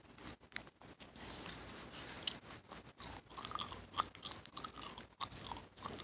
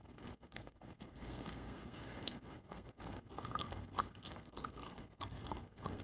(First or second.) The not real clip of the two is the second